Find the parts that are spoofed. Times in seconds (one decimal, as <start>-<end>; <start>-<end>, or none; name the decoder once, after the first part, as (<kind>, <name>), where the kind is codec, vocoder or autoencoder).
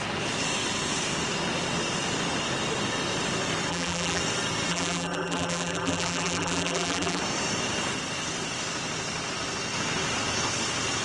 3.7-4.2 (vocoder, BigVGAN v2); 4.7-7.2